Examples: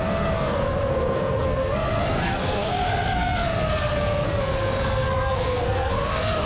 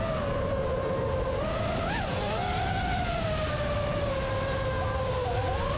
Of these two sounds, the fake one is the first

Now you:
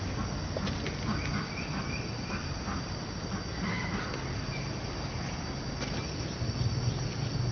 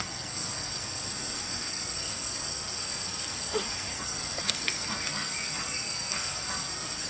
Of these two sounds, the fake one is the second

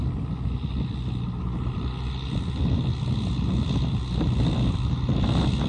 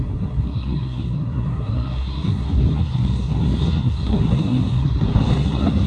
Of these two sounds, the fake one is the second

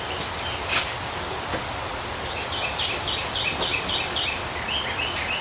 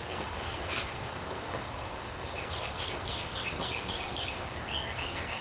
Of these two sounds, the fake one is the second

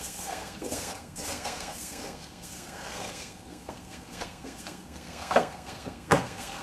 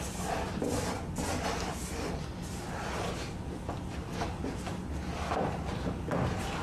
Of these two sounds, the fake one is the first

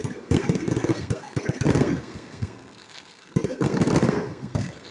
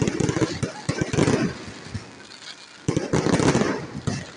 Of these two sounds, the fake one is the first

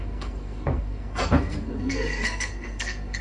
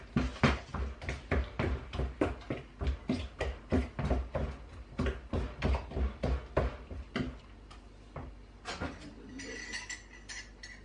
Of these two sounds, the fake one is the first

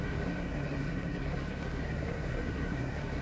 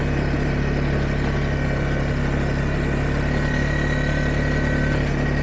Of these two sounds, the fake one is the first